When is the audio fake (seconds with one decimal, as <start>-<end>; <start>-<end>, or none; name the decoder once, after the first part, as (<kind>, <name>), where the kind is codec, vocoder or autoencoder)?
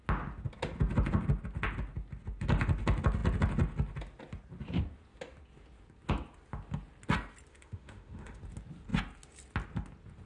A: 7.5-8.4 (autoencoder, DAC-VAE)